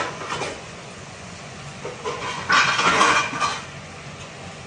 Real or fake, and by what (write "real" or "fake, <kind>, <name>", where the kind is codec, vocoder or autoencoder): fake, vocoder, Vocos